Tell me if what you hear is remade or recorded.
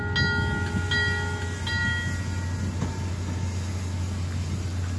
recorded